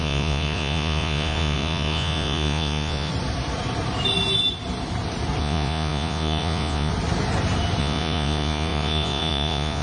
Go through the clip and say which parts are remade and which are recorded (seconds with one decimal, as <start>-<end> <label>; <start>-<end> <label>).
0.0-3.1 remade; 3.1-5.4 recorded; 5.4-6.9 remade; 6.9-7.8 recorded; 7.8-9.8 remade